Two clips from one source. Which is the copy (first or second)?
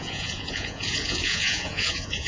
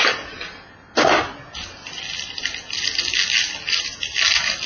first